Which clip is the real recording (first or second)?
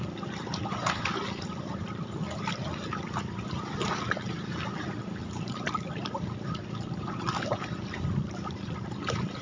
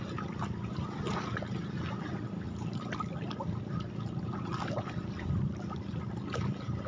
second